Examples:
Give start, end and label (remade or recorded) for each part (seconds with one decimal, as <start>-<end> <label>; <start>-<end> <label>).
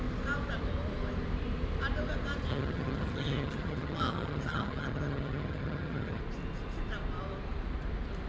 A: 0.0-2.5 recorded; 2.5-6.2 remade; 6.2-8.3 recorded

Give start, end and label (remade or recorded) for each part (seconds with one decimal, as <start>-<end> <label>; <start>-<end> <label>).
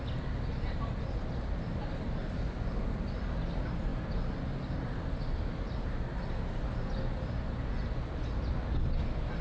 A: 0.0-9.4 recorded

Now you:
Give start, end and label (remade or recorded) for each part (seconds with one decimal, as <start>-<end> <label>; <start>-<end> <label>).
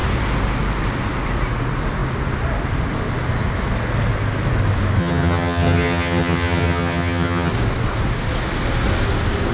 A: 0.0-5.0 recorded; 5.0-7.5 remade; 7.5-9.5 recorded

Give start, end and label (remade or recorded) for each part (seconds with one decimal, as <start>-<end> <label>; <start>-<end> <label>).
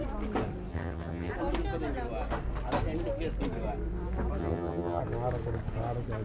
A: 0.0-0.7 recorded; 0.7-1.3 remade; 1.3-4.4 recorded; 4.4-5.0 remade; 5.0-6.2 recorded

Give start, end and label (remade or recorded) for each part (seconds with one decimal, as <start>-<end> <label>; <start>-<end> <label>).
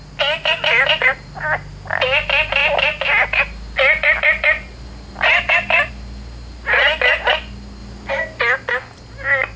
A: 0.0-9.6 recorded